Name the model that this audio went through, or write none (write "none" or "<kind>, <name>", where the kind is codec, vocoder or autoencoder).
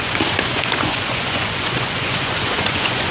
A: vocoder, Vocos